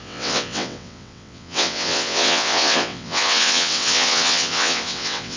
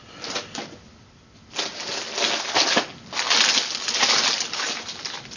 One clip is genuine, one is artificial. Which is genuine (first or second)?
second